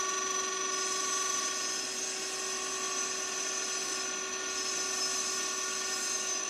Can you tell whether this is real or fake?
real